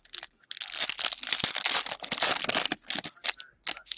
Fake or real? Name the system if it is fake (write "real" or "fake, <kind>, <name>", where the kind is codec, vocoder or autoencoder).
real